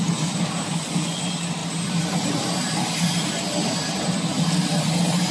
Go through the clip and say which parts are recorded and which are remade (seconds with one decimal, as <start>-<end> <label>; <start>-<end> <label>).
0.0-0.7 recorded; 0.7-1.2 remade; 1.2-5.3 recorded